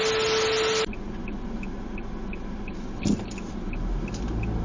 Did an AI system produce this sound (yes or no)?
no